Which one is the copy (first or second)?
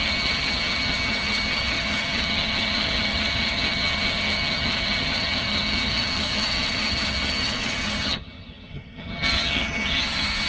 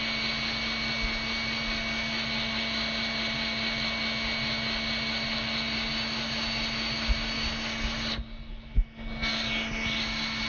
first